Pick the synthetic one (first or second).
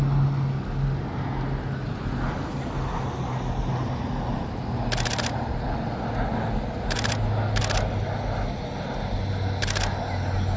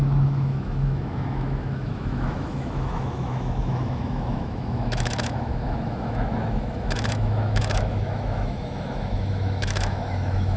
second